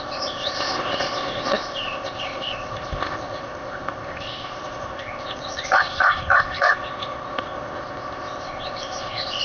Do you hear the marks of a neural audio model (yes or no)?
yes